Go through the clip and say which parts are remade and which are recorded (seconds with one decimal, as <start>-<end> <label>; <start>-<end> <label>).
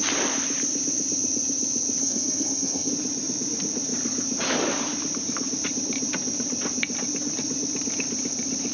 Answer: 0.0-2.0 recorded; 2.0-2.9 remade; 2.9-8.7 recorded